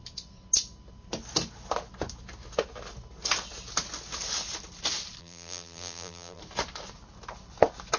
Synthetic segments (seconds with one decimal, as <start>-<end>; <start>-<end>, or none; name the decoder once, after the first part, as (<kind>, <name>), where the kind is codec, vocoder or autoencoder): 5.2-6.4 (vocoder, BigVGAN v2)